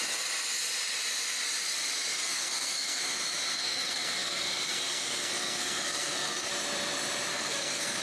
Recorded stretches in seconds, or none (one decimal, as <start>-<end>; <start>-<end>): 0.0-2.1; 3.0-3.5; 6.5-7.3